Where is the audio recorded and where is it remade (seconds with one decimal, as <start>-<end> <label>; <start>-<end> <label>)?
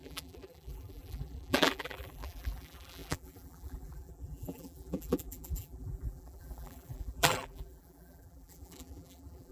0.0-9.5 remade